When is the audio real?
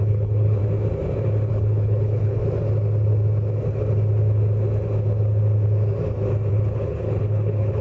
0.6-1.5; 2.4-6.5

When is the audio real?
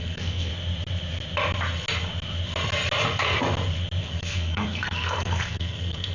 0.5-4.0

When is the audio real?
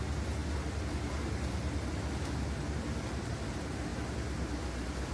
0.0-5.1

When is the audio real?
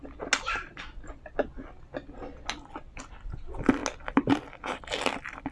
0.0-5.5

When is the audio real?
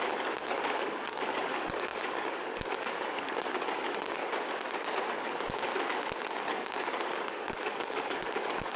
4.2-5.1; 5.7-6.4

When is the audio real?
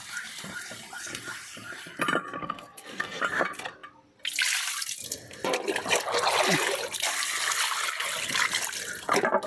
0.0-2.4; 3.2-9.5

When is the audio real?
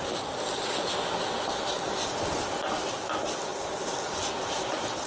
0.0-5.1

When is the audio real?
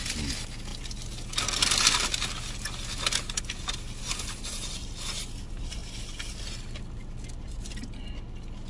0.0-8.7